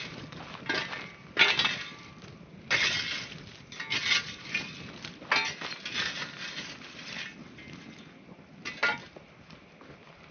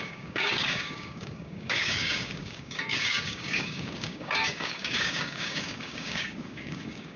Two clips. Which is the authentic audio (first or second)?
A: first